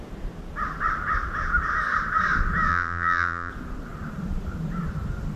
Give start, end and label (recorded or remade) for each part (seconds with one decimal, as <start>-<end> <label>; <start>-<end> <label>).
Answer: 0.0-2.7 recorded; 2.7-3.5 remade; 3.5-5.4 recorded